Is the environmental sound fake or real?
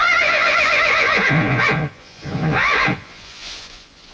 fake